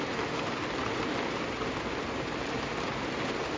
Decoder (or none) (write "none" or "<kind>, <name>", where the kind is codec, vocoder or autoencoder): none